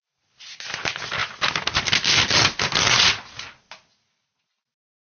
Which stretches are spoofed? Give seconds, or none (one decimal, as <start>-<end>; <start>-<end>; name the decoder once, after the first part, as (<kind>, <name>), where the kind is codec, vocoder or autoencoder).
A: none